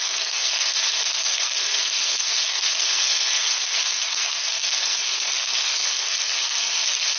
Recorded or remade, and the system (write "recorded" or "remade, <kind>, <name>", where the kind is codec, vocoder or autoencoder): remade, codec, SNAC